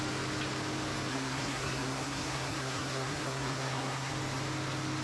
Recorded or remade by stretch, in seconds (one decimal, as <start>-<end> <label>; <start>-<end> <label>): 0.0-1.1 recorded; 1.1-4.1 remade; 4.1-5.0 recorded